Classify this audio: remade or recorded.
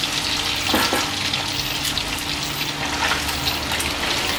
recorded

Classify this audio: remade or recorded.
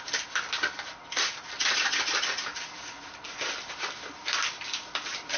recorded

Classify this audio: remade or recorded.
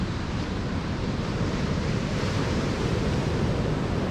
remade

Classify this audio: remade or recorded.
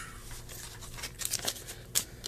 recorded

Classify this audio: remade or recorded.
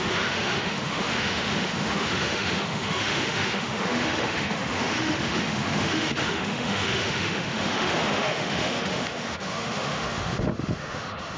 remade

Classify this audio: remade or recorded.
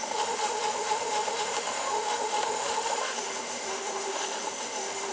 remade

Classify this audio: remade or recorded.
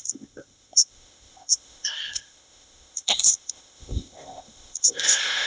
remade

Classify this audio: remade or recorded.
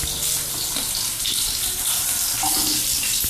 recorded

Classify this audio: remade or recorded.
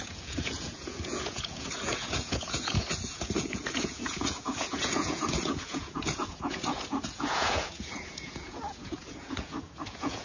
remade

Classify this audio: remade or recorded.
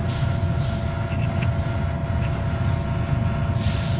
recorded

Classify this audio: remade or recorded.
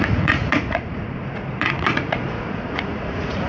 remade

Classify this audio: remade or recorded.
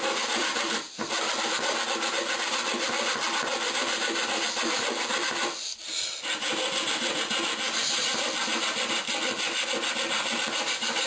remade